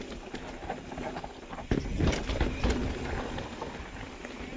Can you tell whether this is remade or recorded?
recorded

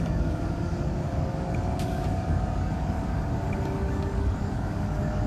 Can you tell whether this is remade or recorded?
remade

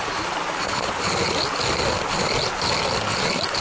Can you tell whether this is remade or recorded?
recorded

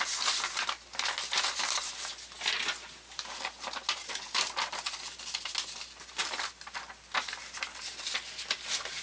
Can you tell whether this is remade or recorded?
recorded